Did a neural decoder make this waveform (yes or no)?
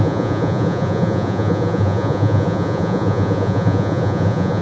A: yes